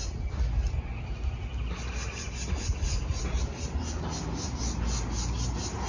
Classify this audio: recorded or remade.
recorded